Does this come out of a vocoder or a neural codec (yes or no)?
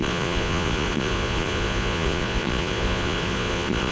yes